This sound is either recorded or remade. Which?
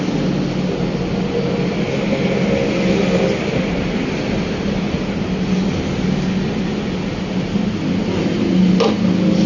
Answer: recorded